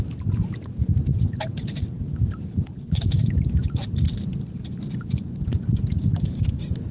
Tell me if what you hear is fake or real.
fake